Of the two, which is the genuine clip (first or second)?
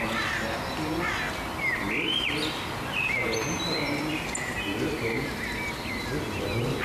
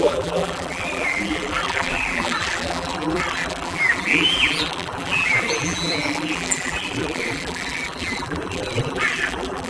first